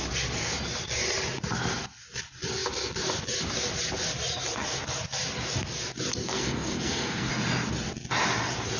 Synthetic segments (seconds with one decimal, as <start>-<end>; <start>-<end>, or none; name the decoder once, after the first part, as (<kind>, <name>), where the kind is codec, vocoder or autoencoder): 6.2-7.3 (codec, SNAC)